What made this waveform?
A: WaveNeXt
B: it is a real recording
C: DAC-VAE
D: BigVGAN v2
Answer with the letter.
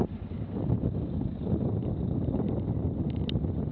B